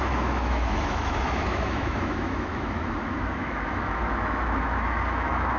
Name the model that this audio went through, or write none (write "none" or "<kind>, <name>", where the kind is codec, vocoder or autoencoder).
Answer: autoencoder, DAC-VAE